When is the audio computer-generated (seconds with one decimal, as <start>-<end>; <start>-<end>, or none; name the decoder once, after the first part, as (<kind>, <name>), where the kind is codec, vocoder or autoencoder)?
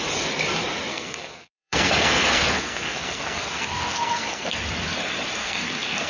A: 0.9-4.6 (codec, SNAC); 5.4-6.1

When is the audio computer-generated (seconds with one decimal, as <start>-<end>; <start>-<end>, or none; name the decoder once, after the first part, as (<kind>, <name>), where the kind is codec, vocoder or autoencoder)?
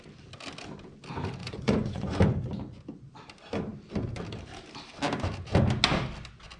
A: 1.4-2.2 (vocoder, Vocos)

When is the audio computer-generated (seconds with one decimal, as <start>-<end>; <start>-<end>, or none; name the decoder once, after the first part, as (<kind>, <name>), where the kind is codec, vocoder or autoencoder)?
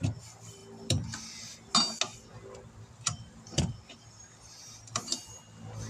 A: none